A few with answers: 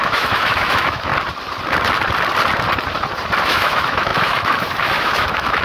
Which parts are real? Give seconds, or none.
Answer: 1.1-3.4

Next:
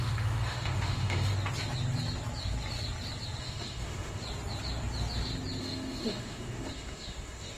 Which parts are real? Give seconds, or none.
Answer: 1.3-3.4; 4.2-5.6

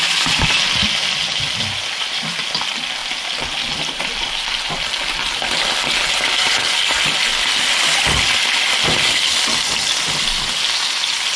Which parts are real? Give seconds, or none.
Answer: 0.0-11.4

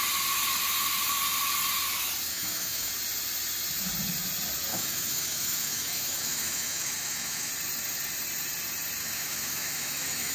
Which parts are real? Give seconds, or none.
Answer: 0.0-2.3; 2.9-4.7; 7.5-9.0

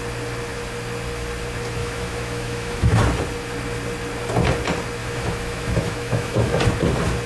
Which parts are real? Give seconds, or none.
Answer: 0.0-1.8; 3.0-5.0; 6.6-7.3

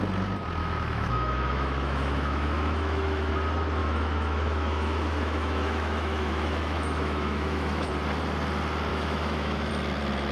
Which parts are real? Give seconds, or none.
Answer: 0.0-0.6; 3.3-3.8; 7.9-8.9; 9.7-10.3

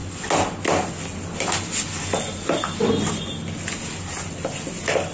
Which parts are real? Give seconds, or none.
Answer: 0.0-5.1

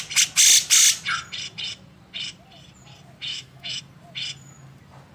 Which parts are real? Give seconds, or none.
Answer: 0.0-3.3; 3.8-5.1